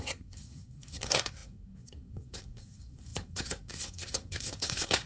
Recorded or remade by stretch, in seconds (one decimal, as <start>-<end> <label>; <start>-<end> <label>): 0.0-5.1 remade